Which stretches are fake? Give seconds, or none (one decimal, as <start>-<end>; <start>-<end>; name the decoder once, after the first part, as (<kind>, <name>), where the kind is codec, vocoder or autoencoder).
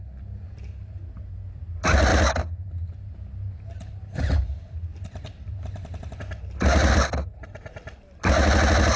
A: none